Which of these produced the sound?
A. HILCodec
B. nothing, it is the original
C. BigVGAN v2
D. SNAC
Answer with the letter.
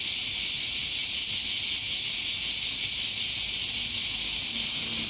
B